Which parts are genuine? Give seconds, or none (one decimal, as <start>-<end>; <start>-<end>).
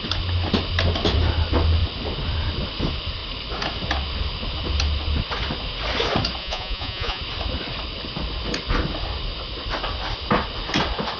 0.0-6.4; 7.2-11.2